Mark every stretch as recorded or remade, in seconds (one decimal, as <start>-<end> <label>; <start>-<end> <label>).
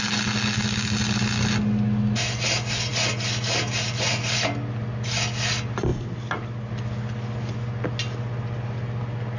0.0-9.4 recorded